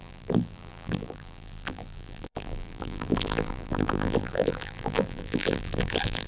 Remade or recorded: remade